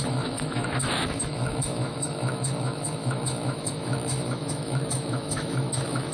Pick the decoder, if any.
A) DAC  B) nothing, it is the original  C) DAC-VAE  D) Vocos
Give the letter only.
C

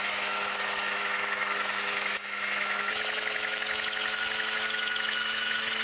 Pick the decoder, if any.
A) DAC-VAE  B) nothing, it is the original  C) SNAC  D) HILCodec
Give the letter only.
A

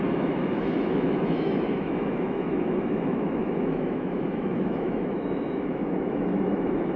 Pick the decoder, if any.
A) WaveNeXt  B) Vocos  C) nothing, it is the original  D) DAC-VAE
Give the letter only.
D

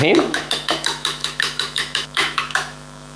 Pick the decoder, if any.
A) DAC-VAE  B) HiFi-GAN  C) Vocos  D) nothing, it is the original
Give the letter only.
A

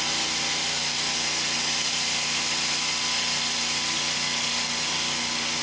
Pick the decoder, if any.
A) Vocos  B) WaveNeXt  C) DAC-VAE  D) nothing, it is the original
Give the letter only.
D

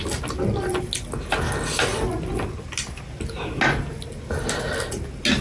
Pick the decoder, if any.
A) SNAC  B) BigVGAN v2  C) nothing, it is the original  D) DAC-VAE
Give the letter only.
C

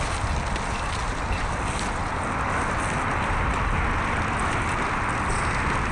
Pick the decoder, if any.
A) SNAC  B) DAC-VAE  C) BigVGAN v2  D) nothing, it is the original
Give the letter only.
D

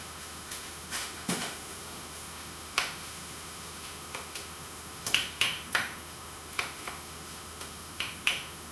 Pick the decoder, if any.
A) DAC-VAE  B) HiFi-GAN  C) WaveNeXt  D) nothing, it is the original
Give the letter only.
A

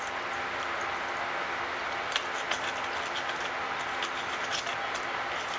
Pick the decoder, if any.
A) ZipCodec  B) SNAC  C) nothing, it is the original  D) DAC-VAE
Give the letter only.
C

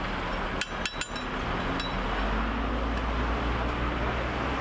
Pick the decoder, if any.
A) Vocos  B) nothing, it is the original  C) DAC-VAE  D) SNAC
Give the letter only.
B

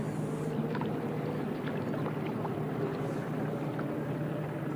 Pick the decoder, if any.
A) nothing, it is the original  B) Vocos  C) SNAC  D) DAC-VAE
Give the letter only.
A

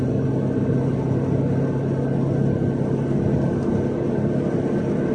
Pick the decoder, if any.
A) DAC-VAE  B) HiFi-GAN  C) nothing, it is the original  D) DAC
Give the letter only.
C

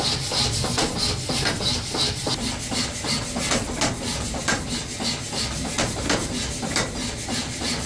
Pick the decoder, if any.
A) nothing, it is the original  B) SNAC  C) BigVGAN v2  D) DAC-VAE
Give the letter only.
A